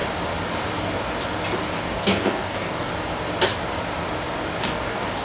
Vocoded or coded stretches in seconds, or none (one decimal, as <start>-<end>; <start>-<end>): 1.8-2.9; 4.6-5.2